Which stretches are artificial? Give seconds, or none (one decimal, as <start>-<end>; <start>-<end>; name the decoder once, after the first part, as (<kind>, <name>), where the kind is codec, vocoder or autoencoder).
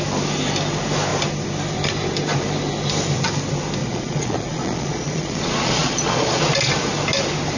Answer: 3.8-6.4 (vocoder, Vocos)